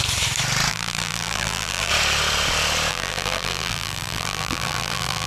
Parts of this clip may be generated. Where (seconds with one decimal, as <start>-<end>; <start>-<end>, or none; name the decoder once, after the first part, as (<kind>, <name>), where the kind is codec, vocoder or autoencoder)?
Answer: 0.7-1.9 (vocoder, BigVGAN v2); 2.9-5.3